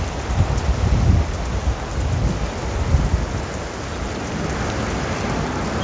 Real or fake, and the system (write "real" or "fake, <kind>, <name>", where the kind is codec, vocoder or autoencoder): real